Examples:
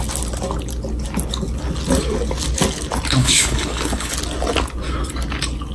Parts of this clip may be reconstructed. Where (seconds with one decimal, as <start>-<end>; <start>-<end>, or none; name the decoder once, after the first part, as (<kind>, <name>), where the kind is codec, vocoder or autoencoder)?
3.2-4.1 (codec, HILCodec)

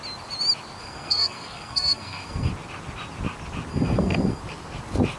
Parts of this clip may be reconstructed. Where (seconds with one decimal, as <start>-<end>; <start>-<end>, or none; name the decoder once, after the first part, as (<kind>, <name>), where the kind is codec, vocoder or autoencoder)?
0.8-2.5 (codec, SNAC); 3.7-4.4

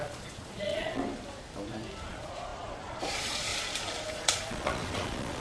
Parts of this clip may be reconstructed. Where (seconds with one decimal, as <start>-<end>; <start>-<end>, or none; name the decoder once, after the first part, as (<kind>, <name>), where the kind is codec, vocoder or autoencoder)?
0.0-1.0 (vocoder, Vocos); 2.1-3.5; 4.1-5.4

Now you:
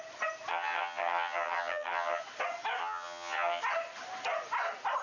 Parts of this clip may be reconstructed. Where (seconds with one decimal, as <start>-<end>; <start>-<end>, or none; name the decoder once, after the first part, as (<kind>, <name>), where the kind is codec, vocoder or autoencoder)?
0.5-2.2 (vocoder, HiFi-GAN); 2.8-3.6